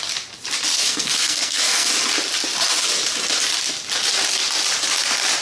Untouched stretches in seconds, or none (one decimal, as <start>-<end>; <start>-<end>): 0.0-0.7; 1.9-5.4